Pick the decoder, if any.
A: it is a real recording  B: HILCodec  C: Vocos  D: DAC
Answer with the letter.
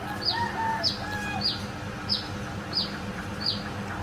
A